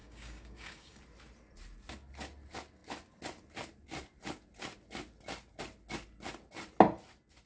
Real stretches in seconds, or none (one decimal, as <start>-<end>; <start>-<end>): 1.0-7.5